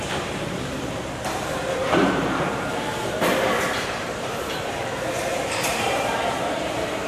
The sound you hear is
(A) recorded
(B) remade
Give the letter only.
B